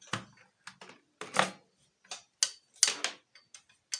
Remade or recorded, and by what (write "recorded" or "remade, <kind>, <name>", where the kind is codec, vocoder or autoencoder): recorded